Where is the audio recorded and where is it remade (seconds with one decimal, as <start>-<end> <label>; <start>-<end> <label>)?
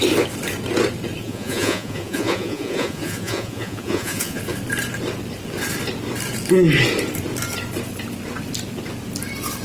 0.0-1.2 recorded; 1.2-4.4 remade; 4.4-9.6 recorded